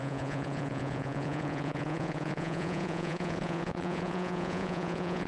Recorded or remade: remade